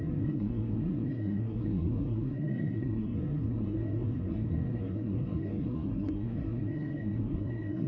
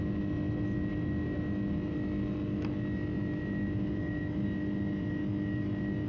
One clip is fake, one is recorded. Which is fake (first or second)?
first